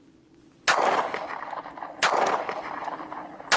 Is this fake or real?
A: real